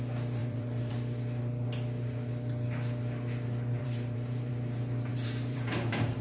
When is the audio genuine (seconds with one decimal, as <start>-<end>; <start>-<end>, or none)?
0.0-0.4; 0.9-3.8; 4.5-5.1